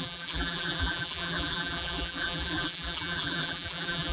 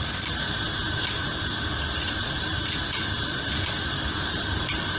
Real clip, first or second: second